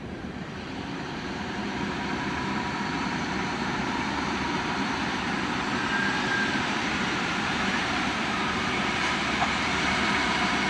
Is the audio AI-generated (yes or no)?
yes